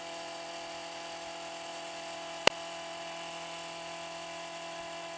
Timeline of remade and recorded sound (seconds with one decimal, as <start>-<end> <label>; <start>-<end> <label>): 0.0-5.2 recorded